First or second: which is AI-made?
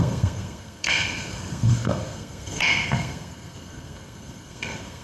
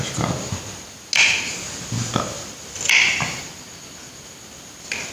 first